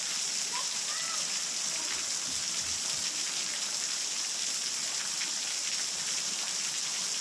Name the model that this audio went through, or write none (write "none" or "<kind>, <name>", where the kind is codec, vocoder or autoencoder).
vocoder, BigVGAN v2